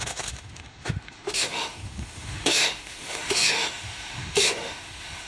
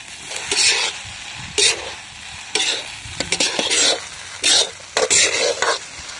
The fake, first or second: first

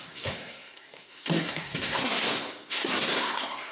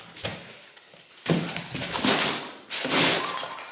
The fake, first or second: first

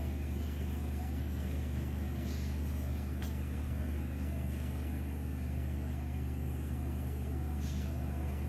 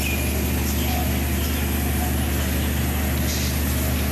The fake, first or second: first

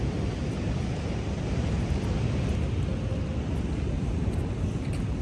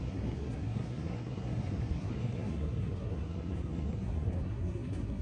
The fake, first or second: second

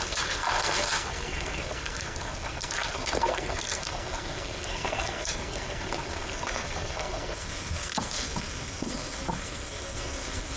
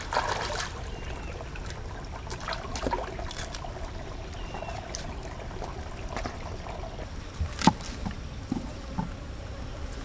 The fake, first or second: first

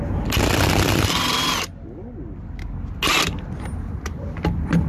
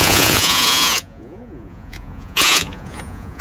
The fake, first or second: second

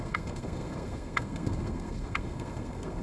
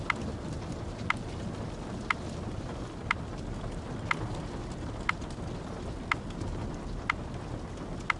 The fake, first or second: first